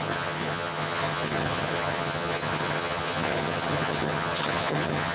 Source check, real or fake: fake